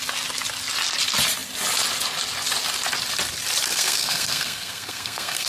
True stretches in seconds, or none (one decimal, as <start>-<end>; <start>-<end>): 0.0-3.7